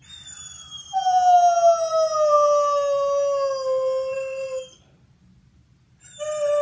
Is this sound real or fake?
real